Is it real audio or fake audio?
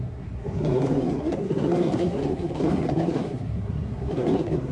fake